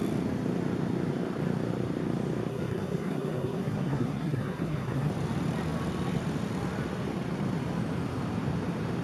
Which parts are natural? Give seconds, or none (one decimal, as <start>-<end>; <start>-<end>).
0.0-2.5; 5.1-9.0